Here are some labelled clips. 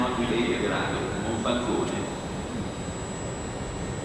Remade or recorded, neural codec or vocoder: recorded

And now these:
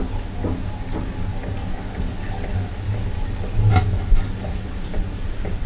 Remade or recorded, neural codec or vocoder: recorded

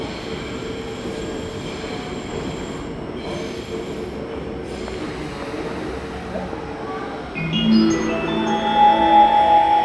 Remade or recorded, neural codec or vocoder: recorded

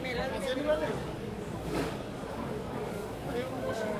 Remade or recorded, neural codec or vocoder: remade, codec, DAC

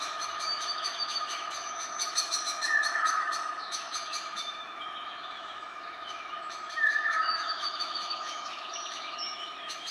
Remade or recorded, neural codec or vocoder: remade, autoencoder, DAC-VAE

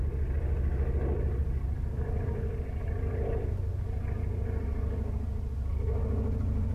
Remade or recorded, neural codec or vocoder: recorded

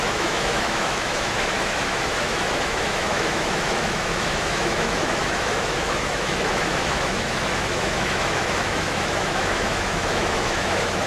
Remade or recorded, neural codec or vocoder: remade, autoencoder, DAC-VAE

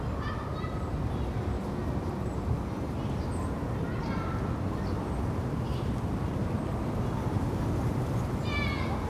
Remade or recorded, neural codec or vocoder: recorded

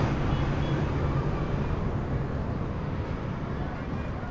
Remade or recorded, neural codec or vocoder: recorded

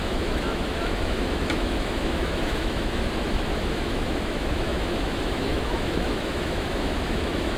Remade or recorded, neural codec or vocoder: remade, autoencoder, DAC-VAE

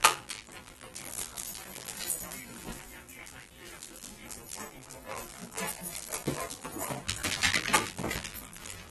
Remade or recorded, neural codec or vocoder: remade, vocoder, BigVGAN v2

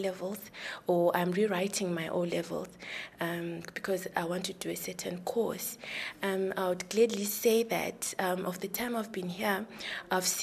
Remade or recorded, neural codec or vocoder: recorded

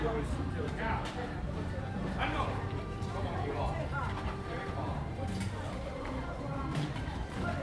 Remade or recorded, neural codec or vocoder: remade, vocoder, BigVGAN v2